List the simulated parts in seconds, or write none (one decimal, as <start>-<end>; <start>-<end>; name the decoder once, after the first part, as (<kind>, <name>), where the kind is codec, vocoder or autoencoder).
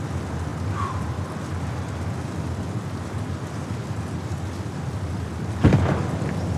none